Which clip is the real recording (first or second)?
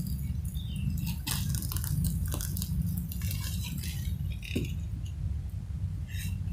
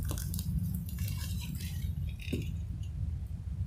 first